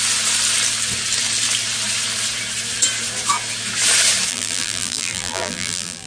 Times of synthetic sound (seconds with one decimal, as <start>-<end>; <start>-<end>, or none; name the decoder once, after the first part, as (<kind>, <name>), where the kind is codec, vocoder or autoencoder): 4.3-6.1 (vocoder, BigVGAN v2)